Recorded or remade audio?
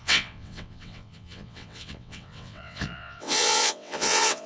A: remade